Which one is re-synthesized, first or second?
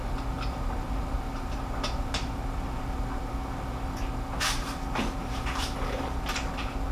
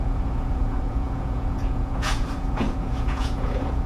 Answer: second